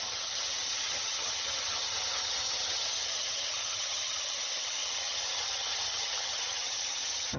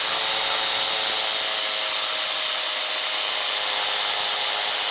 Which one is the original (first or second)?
second